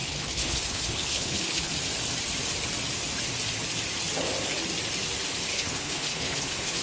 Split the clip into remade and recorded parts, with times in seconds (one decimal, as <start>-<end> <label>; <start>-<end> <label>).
0.0-1.7 remade; 1.7-5.5 recorded; 5.5-6.8 remade

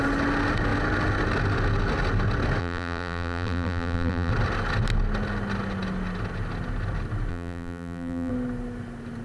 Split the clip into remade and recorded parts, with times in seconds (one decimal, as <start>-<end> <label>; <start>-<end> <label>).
0.0-2.6 recorded; 2.6-4.3 remade; 4.3-7.3 recorded; 7.3-8.3 remade; 8.3-9.2 recorded